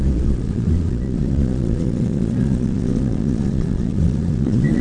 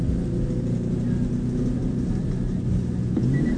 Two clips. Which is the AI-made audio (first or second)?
first